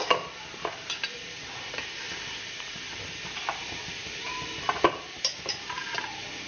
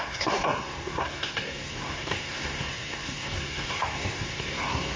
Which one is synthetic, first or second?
second